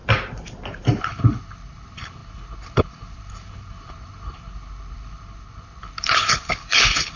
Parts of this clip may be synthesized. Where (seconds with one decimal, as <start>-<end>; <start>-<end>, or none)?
1.0-7.2